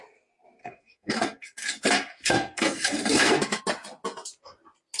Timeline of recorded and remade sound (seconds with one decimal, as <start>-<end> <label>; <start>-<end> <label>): 0.0-0.6 recorded; 0.6-3.6 remade; 3.6-5.0 recorded